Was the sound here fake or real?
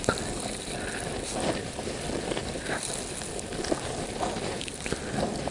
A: real